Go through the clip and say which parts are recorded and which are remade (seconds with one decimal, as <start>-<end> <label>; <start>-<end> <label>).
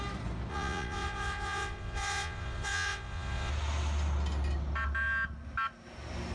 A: 0.0-0.5 recorded; 0.5-3.5 remade; 3.5-6.3 recorded